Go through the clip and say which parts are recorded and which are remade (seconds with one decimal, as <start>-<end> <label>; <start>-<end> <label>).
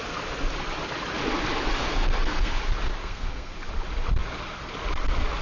0.0-1.8 recorded; 1.8-2.6 remade; 2.6-3.0 recorded; 3.0-3.7 remade; 3.7-5.4 recorded